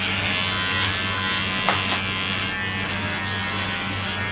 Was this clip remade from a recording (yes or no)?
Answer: no